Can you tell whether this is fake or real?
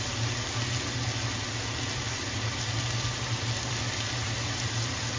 real